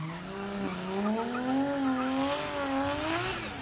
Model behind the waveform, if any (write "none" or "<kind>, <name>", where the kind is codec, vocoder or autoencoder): none